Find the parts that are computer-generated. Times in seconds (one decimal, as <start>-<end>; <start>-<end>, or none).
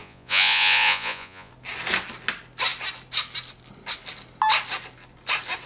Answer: 0.0-1.5